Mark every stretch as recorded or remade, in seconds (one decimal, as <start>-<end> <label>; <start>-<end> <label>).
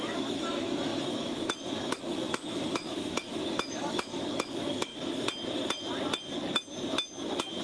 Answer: 0.0-4.9 remade; 4.9-7.6 recorded